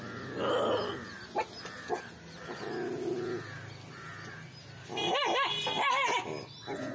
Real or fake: real